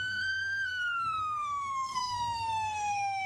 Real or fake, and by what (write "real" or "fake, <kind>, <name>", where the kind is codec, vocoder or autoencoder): fake, codec, SNAC